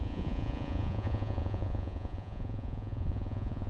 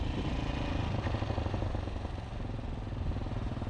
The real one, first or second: second